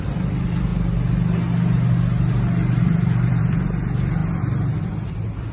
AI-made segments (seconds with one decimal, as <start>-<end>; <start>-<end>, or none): 0.0-0.7; 2.8-5.5